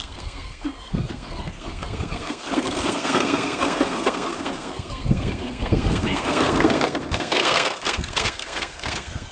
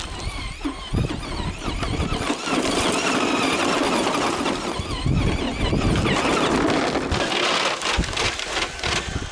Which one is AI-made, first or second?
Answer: first